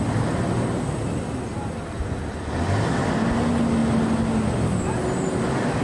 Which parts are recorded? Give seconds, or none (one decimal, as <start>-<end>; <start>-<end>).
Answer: 0.0-5.8